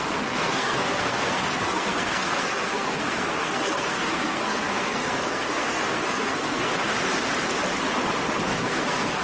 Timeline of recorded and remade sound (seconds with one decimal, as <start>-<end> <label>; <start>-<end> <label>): 0.0-6.7 remade; 6.7-8.6 recorded; 8.6-9.2 remade